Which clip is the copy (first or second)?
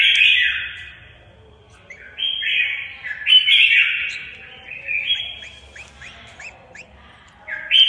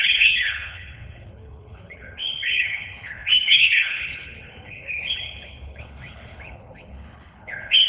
second